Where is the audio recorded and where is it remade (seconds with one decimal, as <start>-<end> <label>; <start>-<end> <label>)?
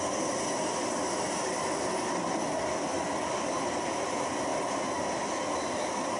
0.0-6.2 recorded